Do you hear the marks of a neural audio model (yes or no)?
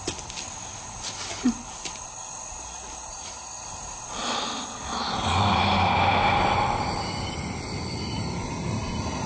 no